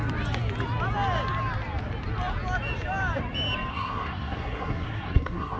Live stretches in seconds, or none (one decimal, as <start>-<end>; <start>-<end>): 0.0-3.7